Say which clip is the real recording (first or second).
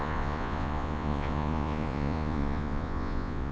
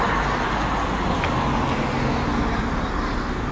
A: second